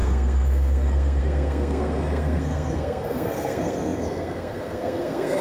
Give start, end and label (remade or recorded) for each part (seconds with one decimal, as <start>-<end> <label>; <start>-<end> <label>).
0.0-5.4 remade

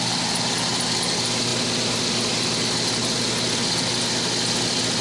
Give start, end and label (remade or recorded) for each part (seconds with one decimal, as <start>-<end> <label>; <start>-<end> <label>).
0.0-5.0 recorded

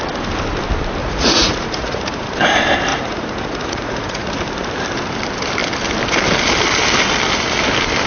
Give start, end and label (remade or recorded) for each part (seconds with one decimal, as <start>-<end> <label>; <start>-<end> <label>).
0.0-1.0 recorded; 1.0-2.0 remade; 2.0-2.9 recorded; 2.9-4.3 remade; 4.3-8.1 recorded

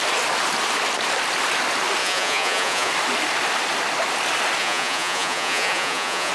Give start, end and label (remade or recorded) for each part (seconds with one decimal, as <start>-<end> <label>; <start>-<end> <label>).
0.0-2.0 recorded; 2.0-2.9 remade; 2.9-4.6 recorded; 4.6-6.3 remade

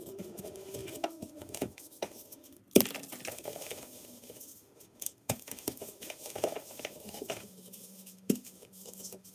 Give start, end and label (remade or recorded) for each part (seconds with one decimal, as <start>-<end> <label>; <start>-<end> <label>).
0.0-2.6 remade; 2.6-3.3 recorded; 3.3-9.3 remade

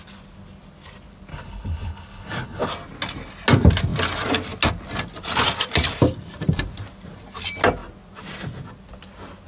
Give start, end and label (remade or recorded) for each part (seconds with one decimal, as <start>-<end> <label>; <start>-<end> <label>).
0.0-1.3 recorded; 1.3-2.7 remade; 2.7-9.5 recorded

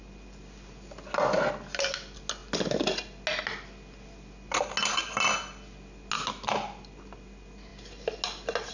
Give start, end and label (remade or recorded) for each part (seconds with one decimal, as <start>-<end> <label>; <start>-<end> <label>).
0.0-8.7 recorded

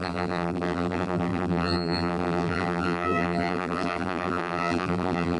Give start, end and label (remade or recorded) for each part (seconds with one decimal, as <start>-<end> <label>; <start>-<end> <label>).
0.0-5.4 remade